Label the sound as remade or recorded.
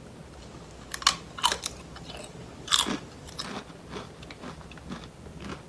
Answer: recorded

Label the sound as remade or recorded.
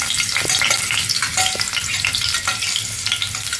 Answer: recorded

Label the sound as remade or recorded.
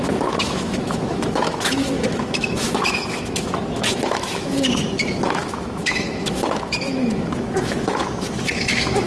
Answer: remade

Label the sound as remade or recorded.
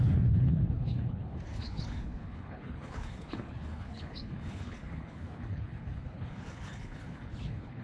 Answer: remade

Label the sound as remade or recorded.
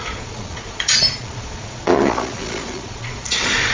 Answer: remade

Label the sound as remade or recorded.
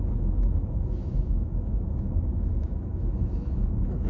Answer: remade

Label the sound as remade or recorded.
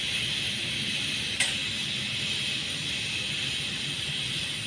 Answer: recorded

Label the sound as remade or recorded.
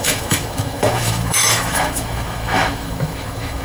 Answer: remade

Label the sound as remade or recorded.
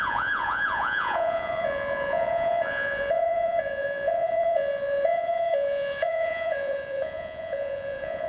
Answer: remade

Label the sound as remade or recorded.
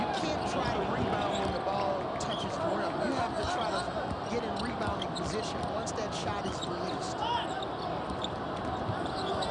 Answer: recorded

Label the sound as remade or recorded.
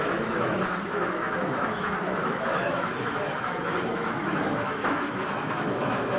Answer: remade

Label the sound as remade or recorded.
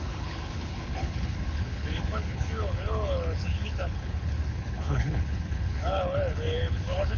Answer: remade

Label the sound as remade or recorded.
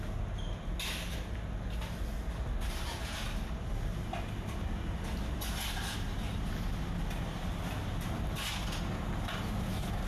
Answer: recorded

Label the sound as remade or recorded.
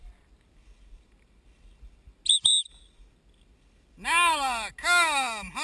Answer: recorded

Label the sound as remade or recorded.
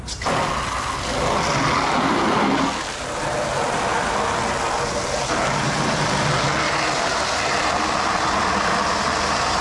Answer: recorded